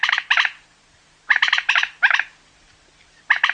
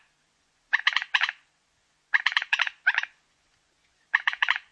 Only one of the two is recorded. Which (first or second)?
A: first